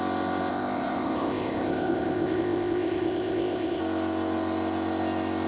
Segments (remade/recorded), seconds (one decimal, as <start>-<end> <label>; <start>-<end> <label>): 0.0-0.5 recorded; 0.5-3.8 remade; 3.8-5.5 recorded